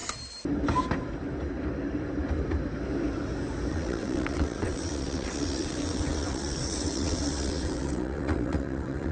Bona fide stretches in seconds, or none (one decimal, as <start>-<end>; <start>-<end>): 0.0-3.7